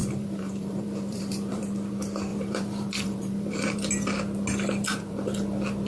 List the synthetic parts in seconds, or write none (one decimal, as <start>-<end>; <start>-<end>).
0.0-1.6; 2.3-3.9